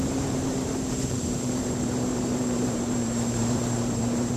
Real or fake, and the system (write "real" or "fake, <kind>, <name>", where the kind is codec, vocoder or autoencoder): fake, vocoder, BigVGAN v2